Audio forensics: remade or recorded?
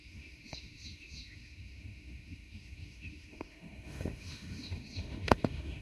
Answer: remade